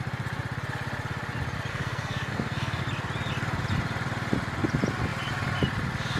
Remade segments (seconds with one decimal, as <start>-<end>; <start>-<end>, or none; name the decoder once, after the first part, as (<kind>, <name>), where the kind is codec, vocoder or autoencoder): 1.7-2.8 (codec, SNAC)